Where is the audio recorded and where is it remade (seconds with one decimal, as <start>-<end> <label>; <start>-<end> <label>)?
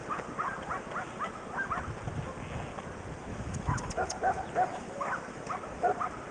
0.0-3.3 recorded; 3.3-3.9 remade; 3.9-4.7 recorded; 4.7-5.3 remade; 5.3-6.3 recorded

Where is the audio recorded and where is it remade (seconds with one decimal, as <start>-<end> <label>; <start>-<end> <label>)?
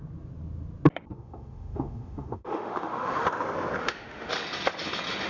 0.0-1.1 recorded; 1.1-3.3 remade; 3.3-3.8 recorded; 3.8-4.3 remade; 4.3-5.3 recorded